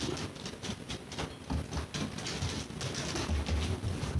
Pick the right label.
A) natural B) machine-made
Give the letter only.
A